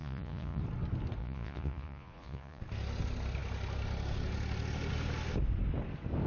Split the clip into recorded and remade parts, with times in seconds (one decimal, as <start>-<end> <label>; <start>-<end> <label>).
0.0-0.6 remade; 0.6-1.2 recorded; 1.2-2.6 remade; 2.6-6.3 recorded